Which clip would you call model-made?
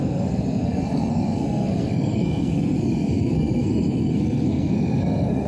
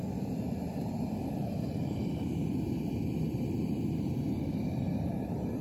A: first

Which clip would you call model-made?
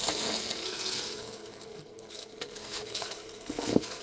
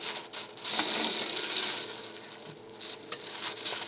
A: first